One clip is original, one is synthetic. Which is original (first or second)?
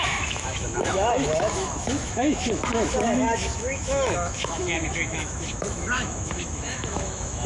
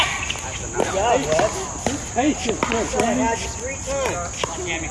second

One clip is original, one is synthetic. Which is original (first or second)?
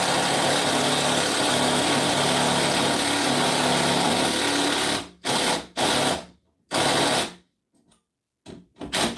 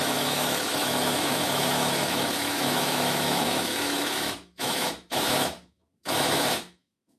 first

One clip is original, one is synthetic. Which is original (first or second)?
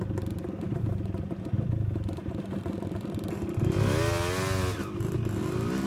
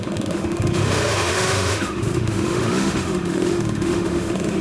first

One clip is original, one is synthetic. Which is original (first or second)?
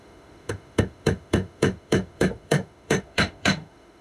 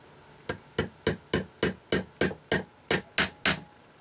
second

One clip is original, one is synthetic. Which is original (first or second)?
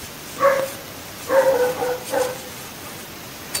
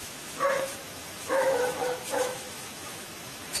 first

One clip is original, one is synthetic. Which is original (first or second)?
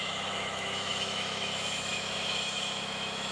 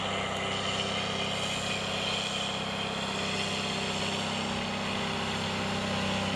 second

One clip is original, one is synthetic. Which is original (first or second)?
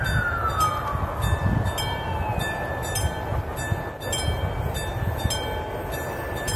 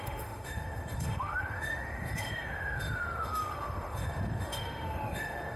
first